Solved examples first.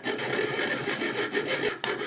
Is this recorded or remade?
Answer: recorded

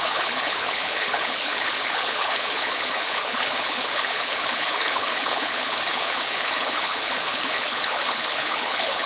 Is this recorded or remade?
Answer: remade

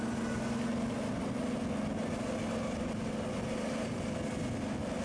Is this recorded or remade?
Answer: recorded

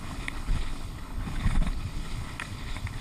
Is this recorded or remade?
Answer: remade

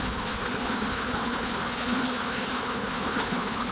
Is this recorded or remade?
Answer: remade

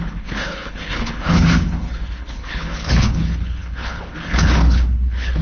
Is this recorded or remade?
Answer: remade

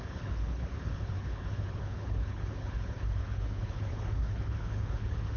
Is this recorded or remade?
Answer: remade